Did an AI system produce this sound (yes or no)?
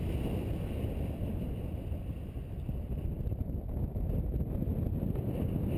no